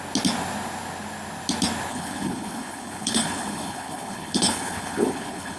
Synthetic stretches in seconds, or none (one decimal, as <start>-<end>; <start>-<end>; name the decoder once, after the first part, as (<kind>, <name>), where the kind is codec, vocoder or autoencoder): 1.9-5.6 (codec, HILCodec)